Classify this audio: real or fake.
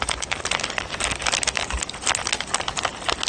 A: real